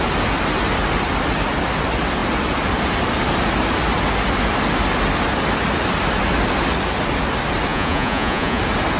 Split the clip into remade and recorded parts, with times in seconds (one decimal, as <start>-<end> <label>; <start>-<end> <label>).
0.0-7.7 recorded; 7.7-8.6 remade; 8.6-9.0 recorded

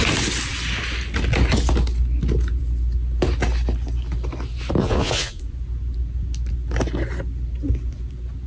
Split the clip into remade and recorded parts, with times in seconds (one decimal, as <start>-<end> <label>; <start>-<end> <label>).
0.0-4.8 recorded; 4.8-5.4 remade; 5.4-8.5 recorded

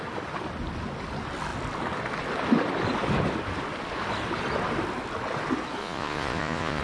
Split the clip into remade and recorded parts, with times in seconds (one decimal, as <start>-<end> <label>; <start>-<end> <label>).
0.0-5.8 recorded; 5.8-6.8 remade

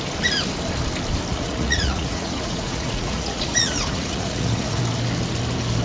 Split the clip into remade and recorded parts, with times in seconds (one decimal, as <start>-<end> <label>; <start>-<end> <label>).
0.0-1.3 recorded; 1.3-4.8 remade; 4.8-5.8 recorded